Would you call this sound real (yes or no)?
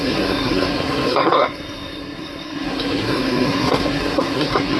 no